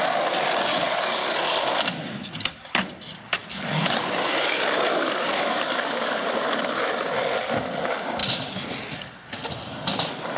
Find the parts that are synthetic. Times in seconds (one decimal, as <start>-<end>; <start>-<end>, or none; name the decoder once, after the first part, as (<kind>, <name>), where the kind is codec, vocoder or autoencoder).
1.2-1.9 (codec, DAC); 3.4-6.5

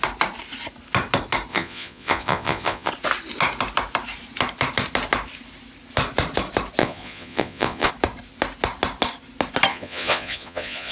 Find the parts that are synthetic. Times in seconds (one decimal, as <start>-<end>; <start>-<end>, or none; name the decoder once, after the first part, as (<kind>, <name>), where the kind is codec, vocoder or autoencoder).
1.5-2.9 (vocoder, Vocos); 6.8-7.9; 9.7-10.9

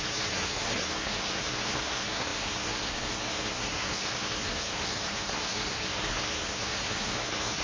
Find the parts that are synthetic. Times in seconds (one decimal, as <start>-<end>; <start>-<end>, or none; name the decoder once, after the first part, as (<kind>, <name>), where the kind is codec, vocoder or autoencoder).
0.0-7.6 (codec, SNAC)

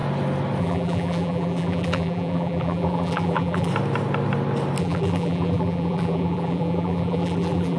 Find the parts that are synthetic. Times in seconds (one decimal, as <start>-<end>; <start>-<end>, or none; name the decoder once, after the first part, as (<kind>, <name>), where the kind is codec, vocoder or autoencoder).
0.6-3.7 (vocoder, BigVGAN v2); 4.8-7.8